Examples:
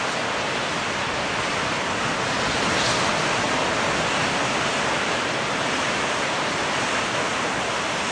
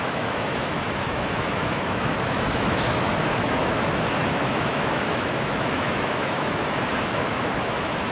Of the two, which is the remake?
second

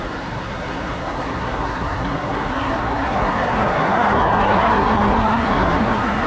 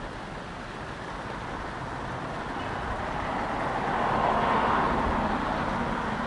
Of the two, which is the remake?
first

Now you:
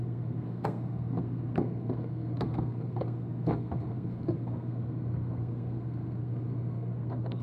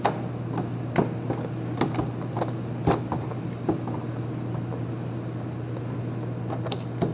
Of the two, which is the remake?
first